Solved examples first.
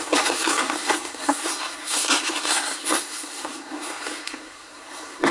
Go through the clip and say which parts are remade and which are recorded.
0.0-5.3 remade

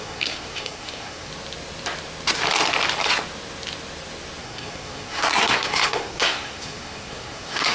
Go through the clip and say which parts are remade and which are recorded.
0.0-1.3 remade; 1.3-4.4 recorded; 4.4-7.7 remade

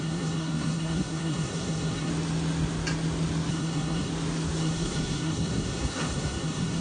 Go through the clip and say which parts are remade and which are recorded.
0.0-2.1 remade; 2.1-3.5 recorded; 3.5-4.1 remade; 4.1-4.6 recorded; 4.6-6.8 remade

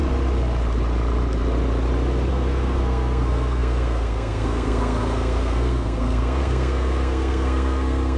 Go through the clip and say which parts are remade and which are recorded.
0.0-2.3 recorded; 2.3-8.2 remade

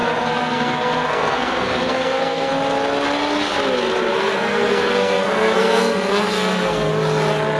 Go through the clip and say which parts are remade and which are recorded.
0.0-2.5 remade; 2.5-4.1 recorded; 4.1-6.9 remade; 6.9-7.6 recorded

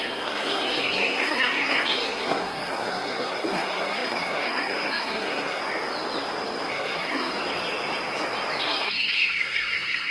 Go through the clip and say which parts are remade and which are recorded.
0.0-5.6 remade; 5.6-6.7 recorded; 6.7-7.3 remade; 7.3-8.6 recorded; 8.6-10.1 remade